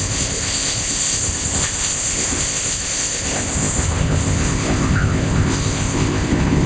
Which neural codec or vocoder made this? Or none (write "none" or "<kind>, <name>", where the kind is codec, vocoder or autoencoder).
codec, ZipCodec